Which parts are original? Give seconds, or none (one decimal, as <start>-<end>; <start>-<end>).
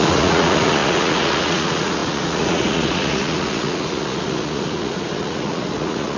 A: none